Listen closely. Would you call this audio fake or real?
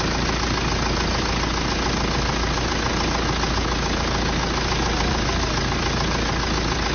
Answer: real